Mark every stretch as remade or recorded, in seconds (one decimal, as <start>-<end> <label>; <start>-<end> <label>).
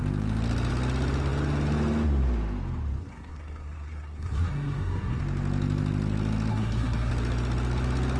0.0-3.0 recorded; 3.0-5.2 remade; 5.2-6.5 recorded; 6.5-7.1 remade; 7.1-8.2 recorded